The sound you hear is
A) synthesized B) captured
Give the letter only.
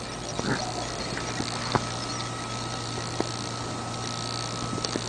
B